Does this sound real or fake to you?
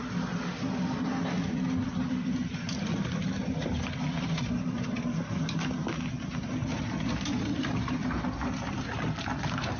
real